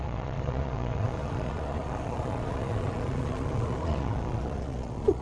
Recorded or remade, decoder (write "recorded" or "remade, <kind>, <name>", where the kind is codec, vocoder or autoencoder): remade, vocoder, Vocos